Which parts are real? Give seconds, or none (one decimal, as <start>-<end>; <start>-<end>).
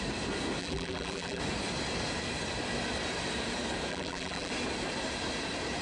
0.0-0.6; 1.4-3.9; 4.5-5.8